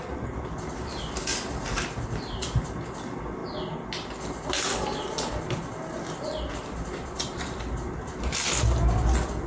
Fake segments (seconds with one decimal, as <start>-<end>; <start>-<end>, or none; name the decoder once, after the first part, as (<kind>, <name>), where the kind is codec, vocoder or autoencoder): none